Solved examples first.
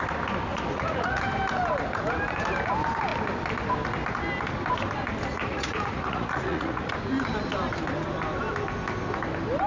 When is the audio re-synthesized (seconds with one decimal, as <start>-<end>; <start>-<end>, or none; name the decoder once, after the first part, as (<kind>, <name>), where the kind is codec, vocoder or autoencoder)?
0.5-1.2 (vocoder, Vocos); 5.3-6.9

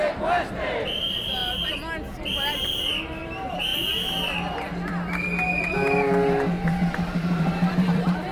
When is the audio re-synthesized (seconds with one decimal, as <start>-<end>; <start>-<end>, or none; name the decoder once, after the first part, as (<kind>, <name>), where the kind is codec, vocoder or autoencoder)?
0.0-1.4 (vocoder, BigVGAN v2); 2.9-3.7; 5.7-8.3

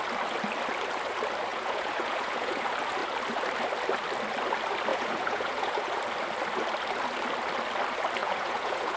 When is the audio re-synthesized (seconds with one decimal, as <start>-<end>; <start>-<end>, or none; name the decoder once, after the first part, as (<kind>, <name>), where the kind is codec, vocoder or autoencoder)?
1.5-2.6 (vocoder, Vocos); 4.9-6.0; 8.2-9.0

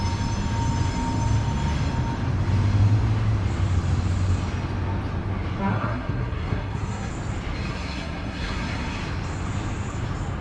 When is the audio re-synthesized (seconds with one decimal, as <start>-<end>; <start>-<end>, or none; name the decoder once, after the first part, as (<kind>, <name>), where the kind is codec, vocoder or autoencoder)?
5.7-7.1 (codec, SNAC); 7.7-9.0

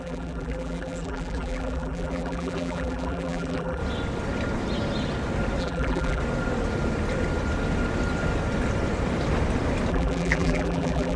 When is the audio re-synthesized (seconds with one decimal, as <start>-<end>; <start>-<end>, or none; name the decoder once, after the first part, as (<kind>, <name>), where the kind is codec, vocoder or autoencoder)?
0.0-3.8 (vocoder, BigVGAN v2); 5.6-6.2; 9.9-11.2

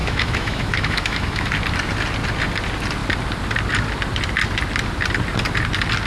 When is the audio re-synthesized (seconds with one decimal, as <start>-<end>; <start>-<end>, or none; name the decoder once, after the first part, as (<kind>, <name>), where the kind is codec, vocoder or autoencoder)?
0.0-1.5 (autoencoder, DAC-VAE)

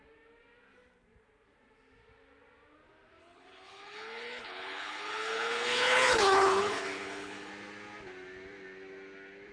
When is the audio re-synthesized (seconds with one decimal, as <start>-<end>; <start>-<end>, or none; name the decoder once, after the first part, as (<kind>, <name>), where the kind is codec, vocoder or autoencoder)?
3.2-7.5 (codec, HILCodec)